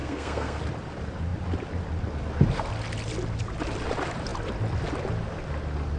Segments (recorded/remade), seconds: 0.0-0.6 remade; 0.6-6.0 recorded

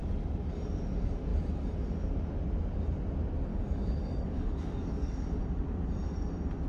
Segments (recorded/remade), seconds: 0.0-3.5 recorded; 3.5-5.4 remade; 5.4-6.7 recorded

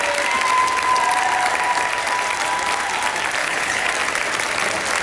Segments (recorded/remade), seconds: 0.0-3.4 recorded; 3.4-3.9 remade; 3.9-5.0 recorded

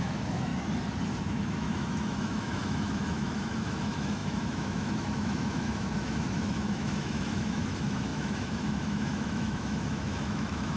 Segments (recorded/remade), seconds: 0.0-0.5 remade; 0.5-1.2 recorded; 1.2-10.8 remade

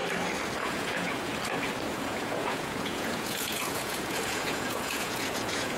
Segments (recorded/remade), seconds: 0.0-0.6 recorded; 0.6-1.3 remade; 1.3-1.9 recorded; 1.9-5.8 remade

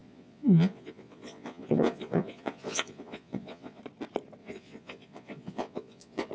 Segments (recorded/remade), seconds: 0.0-3.8 remade; 3.8-4.4 recorded; 4.4-6.3 remade

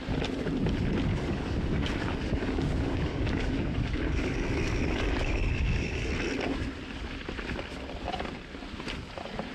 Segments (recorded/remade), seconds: 0.0-1.1 recorded; 1.1-6.1 remade; 6.1-9.5 recorded

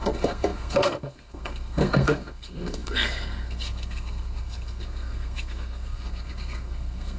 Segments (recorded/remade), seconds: 0.0-7.2 remade